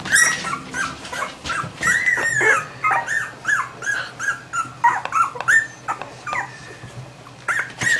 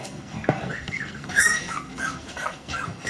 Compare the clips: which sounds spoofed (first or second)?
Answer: second